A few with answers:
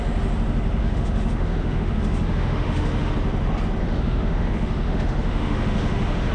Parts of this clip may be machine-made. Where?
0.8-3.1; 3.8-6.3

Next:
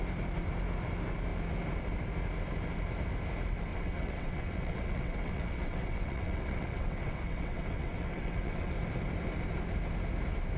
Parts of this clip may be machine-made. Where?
3.7-8.7

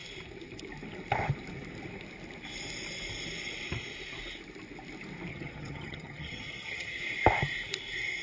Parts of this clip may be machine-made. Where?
5.3-7.0

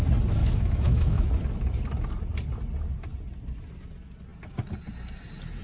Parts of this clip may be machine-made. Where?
0.4-1.3

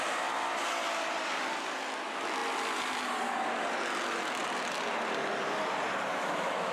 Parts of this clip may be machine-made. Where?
6.1-6.7